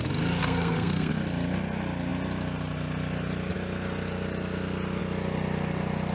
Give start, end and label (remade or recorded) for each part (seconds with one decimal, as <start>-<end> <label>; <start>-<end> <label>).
0.0-0.4 recorded; 0.4-1.1 remade; 1.1-6.1 recorded